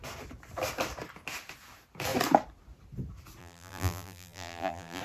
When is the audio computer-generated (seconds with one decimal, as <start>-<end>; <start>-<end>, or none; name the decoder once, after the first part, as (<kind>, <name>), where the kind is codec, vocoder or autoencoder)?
3.4-5.0 (vocoder, BigVGAN v2)